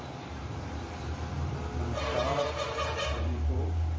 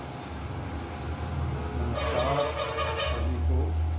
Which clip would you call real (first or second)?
second